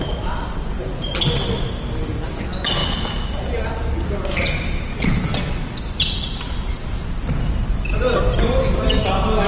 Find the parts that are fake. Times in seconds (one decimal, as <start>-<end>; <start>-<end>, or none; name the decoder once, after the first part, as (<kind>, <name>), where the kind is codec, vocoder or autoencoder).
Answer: none